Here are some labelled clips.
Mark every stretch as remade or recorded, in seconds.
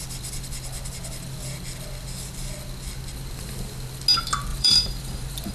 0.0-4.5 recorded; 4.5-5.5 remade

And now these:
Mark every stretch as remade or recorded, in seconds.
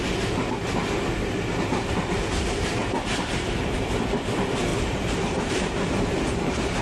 0.0-2.8 recorded; 2.8-3.6 remade; 3.6-4.7 recorded; 4.7-6.8 remade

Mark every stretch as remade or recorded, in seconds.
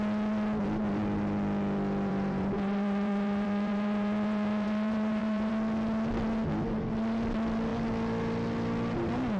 0.0-2.1 recorded; 2.1-5.5 remade; 5.5-9.4 recorded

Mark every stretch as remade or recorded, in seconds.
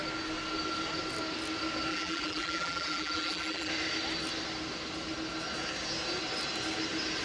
0.0-1.9 recorded; 1.9-3.7 remade; 3.7-7.2 recorded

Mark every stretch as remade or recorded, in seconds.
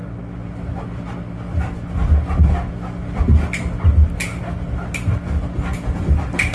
0.0-6.5 recorded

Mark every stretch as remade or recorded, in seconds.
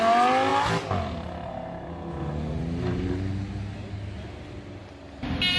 0.0-5.6 recorded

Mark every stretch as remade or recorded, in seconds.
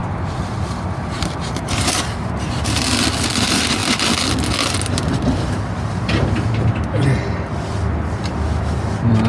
0.0-2.5 remade; 2.5-9.3 recorded